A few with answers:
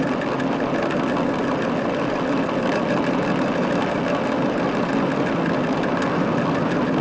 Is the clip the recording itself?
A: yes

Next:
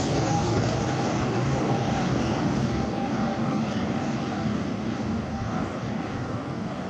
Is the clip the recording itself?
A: no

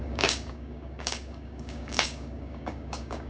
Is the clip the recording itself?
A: no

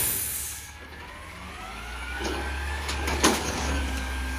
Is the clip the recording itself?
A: no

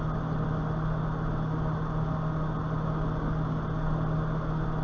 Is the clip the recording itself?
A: yes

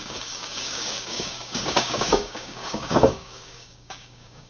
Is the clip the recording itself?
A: no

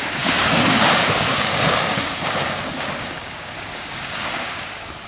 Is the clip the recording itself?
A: no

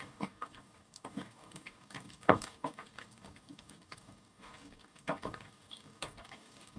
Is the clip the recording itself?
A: no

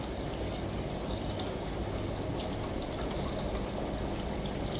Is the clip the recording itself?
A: yes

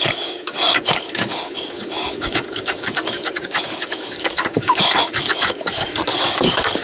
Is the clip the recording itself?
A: no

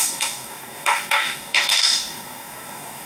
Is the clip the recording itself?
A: no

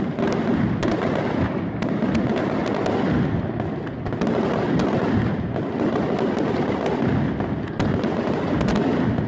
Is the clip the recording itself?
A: yes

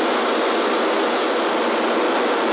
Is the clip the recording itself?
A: yes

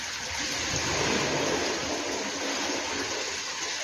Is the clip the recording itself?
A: yes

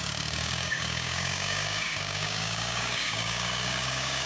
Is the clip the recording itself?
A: no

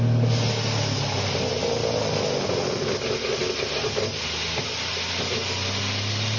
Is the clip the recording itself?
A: yes